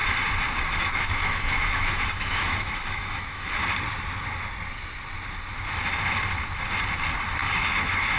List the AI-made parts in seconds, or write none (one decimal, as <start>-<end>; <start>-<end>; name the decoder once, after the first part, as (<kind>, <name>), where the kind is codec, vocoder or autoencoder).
0.8-3.6 (autoencoder, DAC-VAE); 7.4-8.2